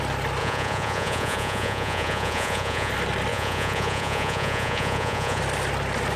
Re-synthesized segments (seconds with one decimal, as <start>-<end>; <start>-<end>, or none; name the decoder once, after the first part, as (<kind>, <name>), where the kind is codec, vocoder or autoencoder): 0.4-2.9 (vocoder, Vocos); 3.3-5.4